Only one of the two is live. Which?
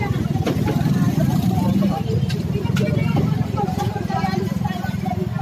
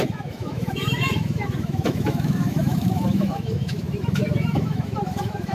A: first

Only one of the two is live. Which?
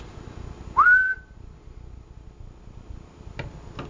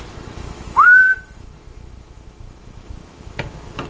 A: first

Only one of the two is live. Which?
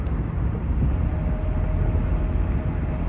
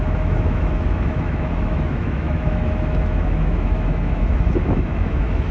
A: first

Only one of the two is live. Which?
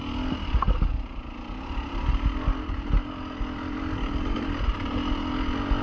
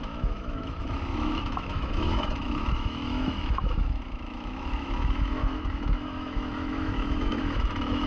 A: first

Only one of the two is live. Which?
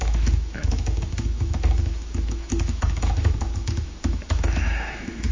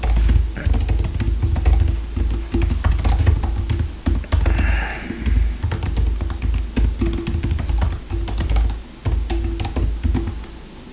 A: second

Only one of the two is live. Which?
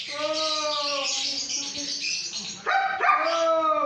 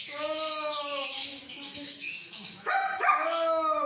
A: first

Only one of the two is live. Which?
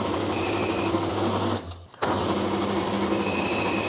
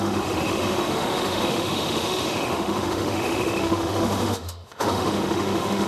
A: first